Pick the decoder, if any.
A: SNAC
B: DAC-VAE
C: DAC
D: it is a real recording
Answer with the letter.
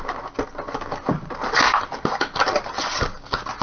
D